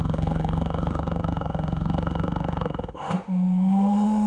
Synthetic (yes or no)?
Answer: yes